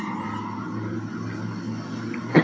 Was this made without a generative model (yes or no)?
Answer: yes